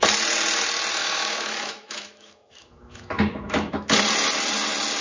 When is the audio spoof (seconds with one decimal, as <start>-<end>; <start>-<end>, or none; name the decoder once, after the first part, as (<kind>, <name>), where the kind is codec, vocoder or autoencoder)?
1.0-4.0 (autoencoder, DAC-VAE)